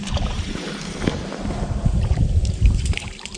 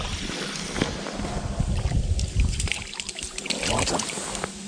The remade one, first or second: first